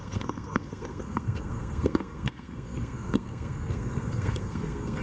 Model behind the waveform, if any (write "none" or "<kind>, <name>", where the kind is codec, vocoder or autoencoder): codec, SNAC